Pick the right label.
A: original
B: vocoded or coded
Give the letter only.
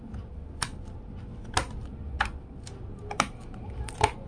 A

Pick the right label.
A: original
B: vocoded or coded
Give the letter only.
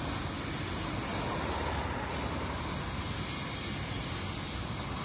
A